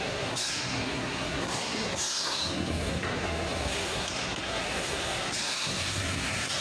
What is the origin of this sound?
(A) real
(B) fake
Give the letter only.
B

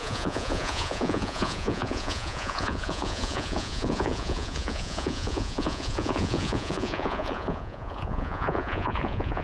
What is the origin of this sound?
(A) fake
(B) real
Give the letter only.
A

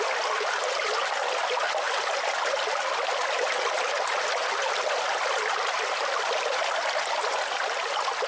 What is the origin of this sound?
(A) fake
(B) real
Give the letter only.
B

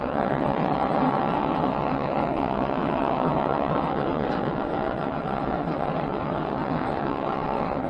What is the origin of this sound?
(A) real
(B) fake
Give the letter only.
B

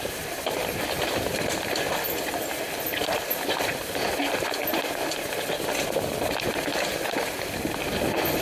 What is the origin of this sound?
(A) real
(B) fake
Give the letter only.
A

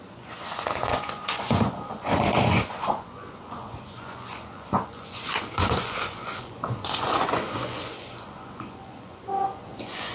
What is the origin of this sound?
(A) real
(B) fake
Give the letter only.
B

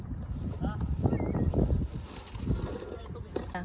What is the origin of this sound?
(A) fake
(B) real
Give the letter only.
B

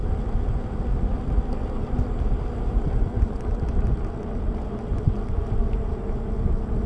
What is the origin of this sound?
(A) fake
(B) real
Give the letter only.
B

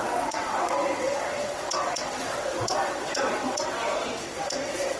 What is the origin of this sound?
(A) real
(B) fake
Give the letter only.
B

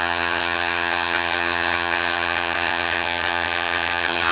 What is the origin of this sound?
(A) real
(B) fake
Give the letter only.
B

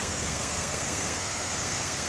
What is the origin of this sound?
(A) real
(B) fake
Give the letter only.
B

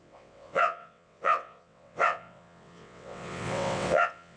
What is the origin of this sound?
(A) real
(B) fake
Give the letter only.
B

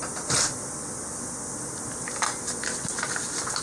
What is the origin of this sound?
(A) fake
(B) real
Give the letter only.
B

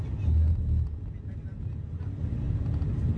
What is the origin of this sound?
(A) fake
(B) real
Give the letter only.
B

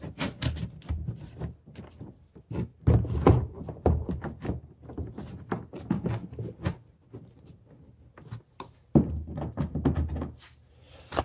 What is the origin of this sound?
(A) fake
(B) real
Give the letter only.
B